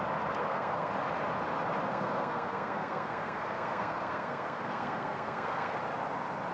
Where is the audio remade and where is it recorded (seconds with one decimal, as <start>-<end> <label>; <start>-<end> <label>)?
0.0-0.4 recorded; 0.4-0.9 remade; 0.9-1.9 recorded; 1.9-5.8 remade; 5.8-6.5 recorded